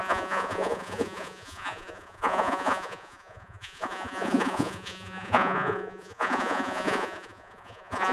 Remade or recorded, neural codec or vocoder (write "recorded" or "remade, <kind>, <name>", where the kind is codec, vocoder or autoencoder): remade, vocoder, Vocos